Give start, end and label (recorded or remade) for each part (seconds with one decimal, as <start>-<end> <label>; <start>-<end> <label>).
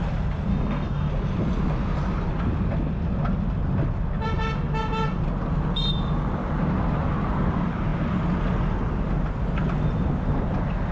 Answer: 0.0-0.5 recorded; 0.5-1.1 remade; 1.1-10.9 recorded